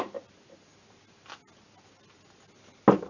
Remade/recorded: recorded